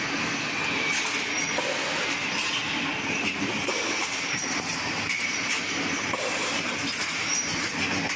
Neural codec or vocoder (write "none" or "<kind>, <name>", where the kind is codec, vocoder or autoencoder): none